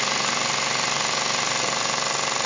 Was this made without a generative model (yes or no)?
yes